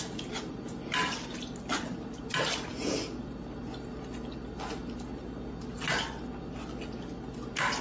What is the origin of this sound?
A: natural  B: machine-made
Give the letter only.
A